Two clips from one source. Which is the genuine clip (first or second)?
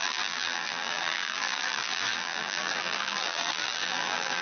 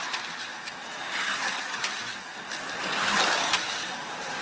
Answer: second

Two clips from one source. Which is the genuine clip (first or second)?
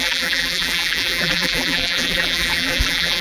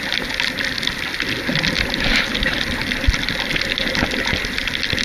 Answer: second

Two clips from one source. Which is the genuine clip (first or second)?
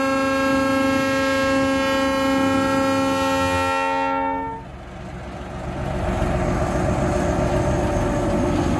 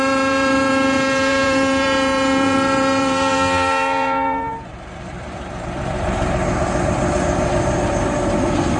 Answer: first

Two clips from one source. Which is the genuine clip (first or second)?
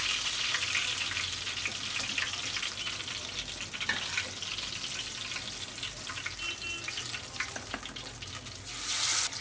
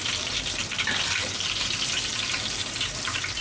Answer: first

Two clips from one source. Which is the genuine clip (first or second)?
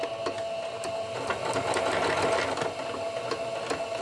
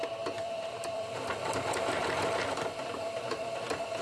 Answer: first